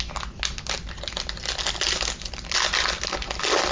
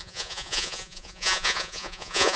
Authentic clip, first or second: first